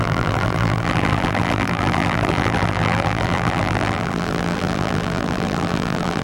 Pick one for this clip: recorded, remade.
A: remade